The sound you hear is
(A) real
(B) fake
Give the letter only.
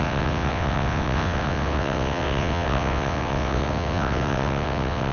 B